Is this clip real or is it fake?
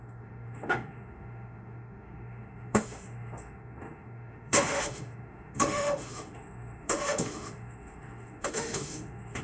fake